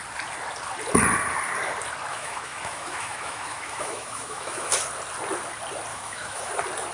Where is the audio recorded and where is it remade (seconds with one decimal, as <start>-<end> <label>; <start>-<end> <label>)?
0.0-2.1 recorded; 2.1-4.7 remade; 4.7-5.9 recorded; 5.9-6.5 remade; 6.5-6.9 recorded